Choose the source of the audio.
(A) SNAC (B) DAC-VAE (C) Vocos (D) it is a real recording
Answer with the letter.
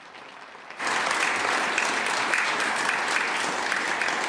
D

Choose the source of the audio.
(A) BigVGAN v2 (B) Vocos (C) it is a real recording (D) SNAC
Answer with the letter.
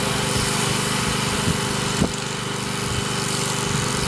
C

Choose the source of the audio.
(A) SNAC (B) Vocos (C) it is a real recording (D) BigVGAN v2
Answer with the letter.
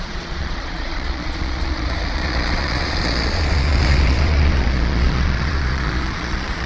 B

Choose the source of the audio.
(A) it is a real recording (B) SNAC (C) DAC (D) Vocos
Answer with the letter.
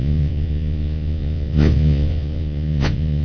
D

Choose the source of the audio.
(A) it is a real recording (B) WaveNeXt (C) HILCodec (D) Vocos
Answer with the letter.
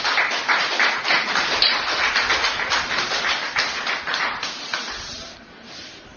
A